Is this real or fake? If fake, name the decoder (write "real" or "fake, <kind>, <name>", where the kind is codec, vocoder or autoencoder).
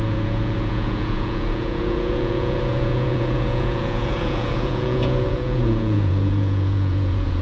fake, vocoder, Vocos